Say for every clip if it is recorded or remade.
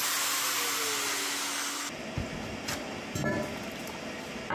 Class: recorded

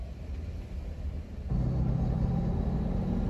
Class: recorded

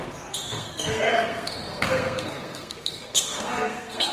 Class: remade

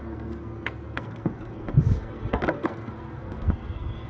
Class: remade